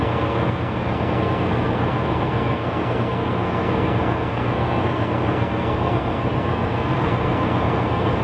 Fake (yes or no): yes